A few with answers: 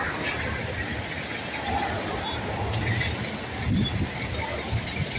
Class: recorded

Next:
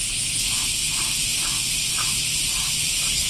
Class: recorded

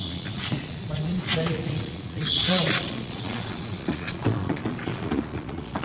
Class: remade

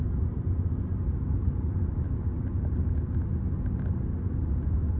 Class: recorded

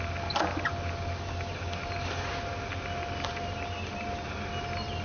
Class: recorded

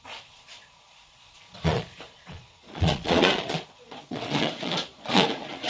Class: remade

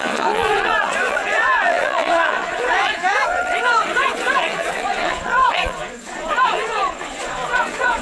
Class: remade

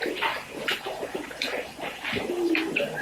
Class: remade